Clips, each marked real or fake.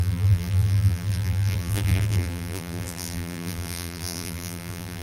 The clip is fake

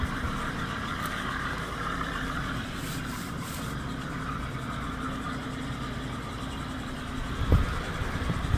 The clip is fake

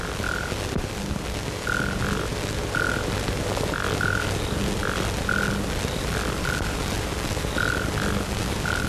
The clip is real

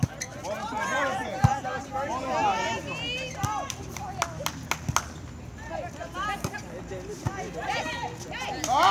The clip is real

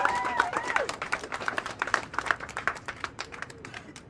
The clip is fake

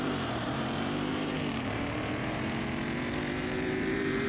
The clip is fake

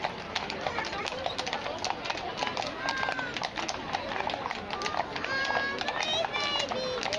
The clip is real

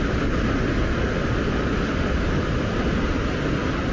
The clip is real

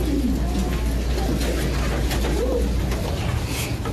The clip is real